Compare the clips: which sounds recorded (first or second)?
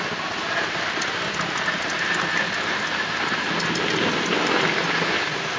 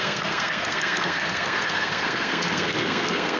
first